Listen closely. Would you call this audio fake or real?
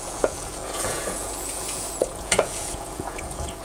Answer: fake